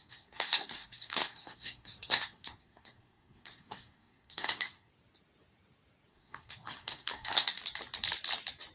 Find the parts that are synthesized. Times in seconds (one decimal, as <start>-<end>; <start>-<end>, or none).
0.0-4.9; 6.1-7.6